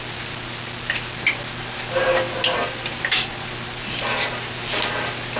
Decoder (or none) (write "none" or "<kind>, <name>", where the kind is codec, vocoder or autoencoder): none